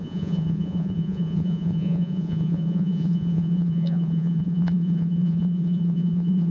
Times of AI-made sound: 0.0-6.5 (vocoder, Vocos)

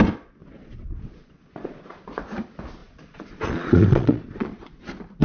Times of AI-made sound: 0.4-2.2 (vocoder, Vocos); 2.8-4.8

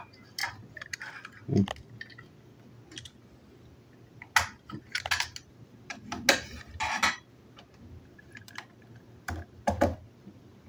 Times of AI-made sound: none

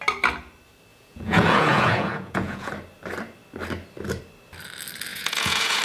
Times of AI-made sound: 0.9-2.7 (vocoder, Vocos); 5.1-5.8